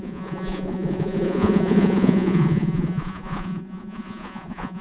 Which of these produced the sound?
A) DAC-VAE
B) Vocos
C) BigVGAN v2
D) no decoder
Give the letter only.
B